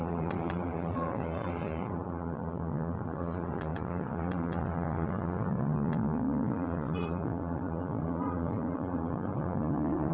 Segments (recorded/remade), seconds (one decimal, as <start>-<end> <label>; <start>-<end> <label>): 0.0-10.1 remade